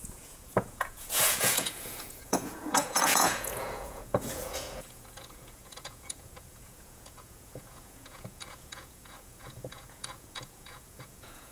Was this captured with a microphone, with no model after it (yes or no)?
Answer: no